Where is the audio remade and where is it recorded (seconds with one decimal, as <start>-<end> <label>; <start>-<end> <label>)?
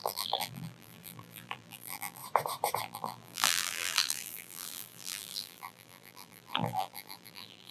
0.0-2.2 remade; 2.2-2.8 recorded; 2.8-7.7 remade